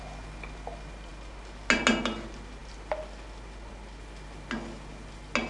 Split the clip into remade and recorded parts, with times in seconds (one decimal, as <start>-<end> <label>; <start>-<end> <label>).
0.0-5.5 recorded